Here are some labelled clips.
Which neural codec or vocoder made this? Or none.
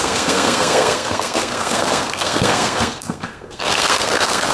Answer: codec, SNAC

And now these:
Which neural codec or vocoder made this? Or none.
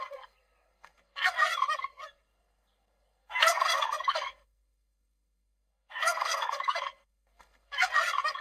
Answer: codec, SNAC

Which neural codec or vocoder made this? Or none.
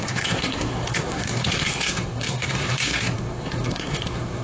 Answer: codec, SNAC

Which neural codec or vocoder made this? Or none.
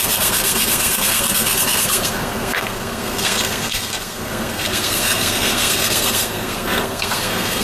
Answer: codec, SNAC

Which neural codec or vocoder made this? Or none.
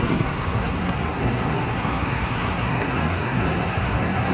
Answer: codec, SNAC